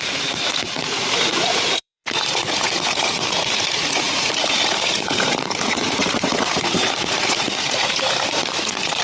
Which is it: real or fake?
fake